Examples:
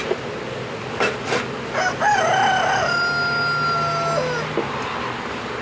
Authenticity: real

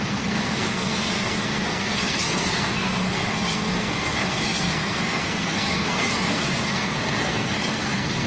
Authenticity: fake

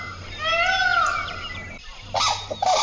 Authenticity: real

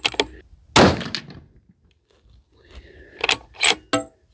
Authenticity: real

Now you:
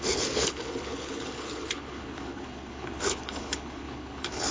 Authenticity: fake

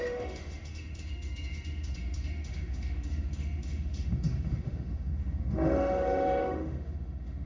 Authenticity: fake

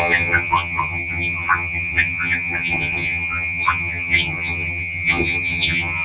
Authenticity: fake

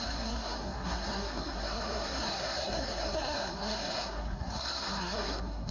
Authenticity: fake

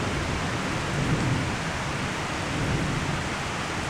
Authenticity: real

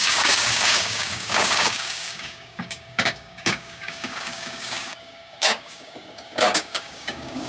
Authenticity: fake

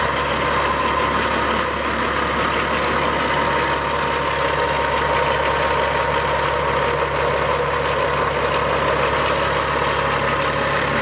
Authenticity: real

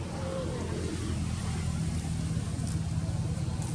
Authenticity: real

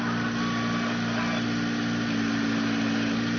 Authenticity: real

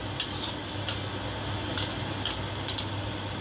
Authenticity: real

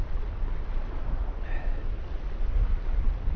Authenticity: real